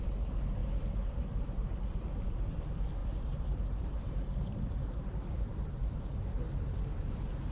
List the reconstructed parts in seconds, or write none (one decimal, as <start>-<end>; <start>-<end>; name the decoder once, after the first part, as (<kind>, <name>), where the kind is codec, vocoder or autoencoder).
3.0-6.4 (vocoder, BigVGAN v2)